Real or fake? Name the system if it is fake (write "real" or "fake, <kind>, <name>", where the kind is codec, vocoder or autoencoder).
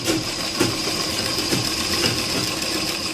fake, vocoder, BigVGAN v2